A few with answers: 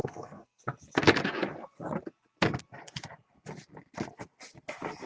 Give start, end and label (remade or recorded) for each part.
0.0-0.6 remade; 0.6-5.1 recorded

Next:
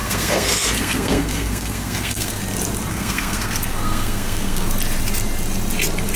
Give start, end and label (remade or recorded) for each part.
0.0-2.4 remade; 2.4-2.9 recorded; 2.9-4.7 remade; 4.7-6.2 recorded

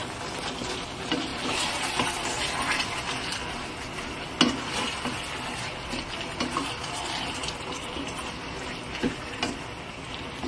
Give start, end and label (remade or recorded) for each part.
0.0-10.5 recorded

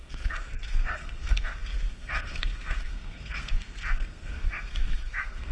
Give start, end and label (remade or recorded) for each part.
0.0-5.5 remade

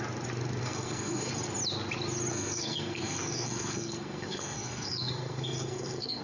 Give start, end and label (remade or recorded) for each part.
0.0-0.6 recorded; 0.6-1.3 remade; 1.3-2.3 recorded; 2.3-6.2 remade

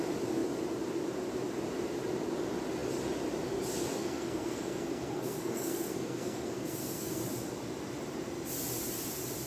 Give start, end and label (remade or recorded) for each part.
0.0-3.9 recorded; 3.9-7.2 remade; 7.2-9.5 recorded

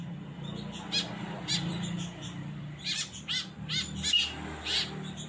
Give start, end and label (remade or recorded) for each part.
0.0-5.3 recorded